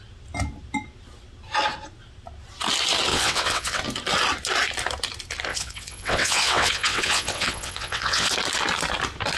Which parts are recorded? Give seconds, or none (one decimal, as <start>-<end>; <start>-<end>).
0.0-3.1; 3.8-5.5; 8.3-9.4